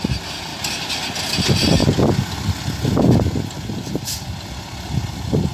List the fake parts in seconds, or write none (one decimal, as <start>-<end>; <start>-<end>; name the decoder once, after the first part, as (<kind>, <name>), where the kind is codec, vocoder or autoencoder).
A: none